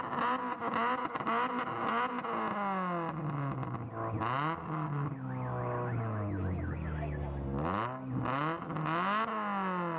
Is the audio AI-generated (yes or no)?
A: no